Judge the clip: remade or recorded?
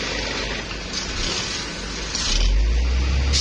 recorded